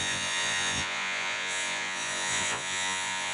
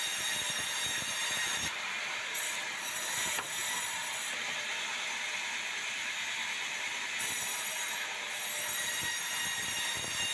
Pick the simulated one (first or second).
first